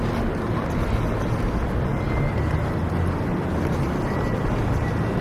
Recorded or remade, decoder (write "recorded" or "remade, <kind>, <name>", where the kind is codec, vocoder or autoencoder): recorded